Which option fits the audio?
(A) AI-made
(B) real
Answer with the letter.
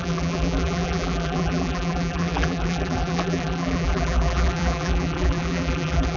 A